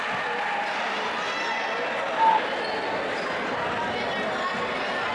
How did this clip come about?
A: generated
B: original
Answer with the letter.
B